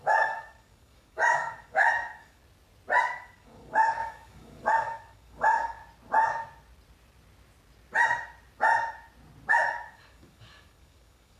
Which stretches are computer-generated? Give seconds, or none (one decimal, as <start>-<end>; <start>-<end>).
0.0-2.4; 3.0-5.8; 9.5-11.4